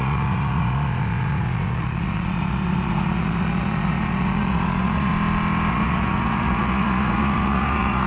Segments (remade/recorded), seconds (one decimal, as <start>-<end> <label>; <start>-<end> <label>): 0.0-5.1 remade; 5.1-5.7 recorded; 5.7-8.1 remade